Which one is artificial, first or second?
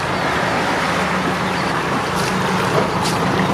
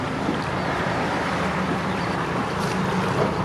second